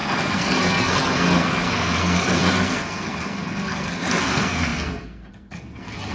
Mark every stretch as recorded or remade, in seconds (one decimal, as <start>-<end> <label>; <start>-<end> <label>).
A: 0.0-6.1 remade